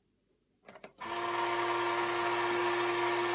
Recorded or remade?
recorded